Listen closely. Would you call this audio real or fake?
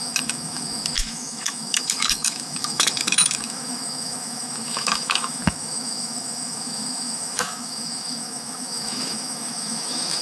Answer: fake